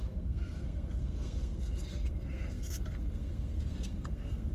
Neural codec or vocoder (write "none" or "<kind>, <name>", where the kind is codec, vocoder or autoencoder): codec, SNAC